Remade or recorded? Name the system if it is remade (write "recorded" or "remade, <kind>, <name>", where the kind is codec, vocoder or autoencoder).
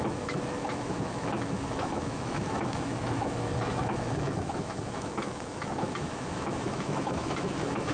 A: remade, autoencoder, DAC-VAE